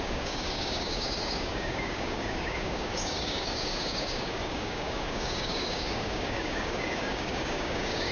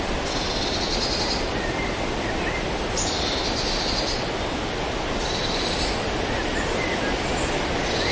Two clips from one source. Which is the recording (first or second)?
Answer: second